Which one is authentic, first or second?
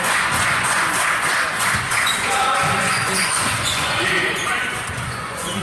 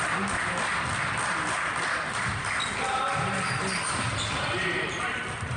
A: second